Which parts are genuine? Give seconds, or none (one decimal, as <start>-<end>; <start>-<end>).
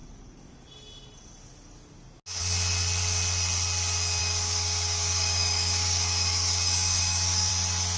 0.0-4.2; 7.5-8.0